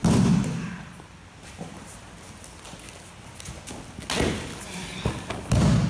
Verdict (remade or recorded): recorded